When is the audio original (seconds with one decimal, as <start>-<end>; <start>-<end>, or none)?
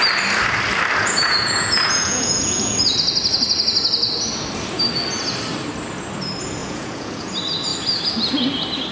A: 0.0-1.0; 2.9-6.6; 7.3-8.9